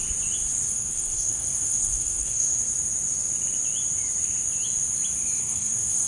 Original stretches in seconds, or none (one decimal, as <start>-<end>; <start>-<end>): 0.0-0.7; 2.7-5.4